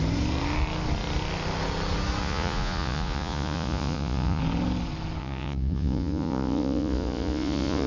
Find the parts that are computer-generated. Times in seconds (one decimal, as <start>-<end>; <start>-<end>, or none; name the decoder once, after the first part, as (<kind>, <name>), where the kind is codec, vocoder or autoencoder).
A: 2.2-4.4 (vocoder, Vocos); 5.2-7.9